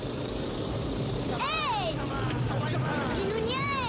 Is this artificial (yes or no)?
yes